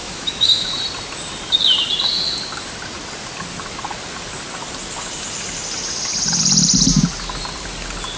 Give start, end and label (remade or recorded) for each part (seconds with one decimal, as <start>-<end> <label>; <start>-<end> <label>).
0.0-0.8 remade; 0.8-8.2 recorded